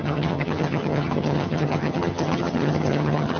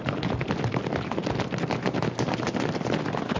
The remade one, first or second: first